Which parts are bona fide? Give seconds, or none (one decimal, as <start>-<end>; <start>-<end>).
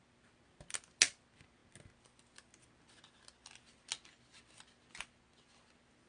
0.0-6.1